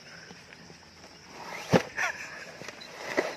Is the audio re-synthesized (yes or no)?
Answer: no